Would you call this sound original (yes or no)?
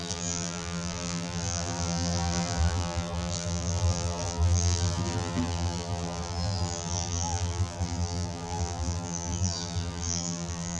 no